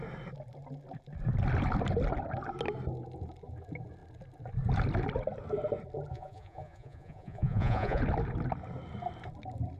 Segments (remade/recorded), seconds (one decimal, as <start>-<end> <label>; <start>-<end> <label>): 0.0-6.1 recorded; 6.1-8.0 remade; 8.0-9.8 recorded